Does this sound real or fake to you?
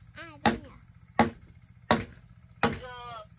real